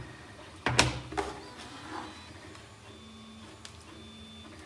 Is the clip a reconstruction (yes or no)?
no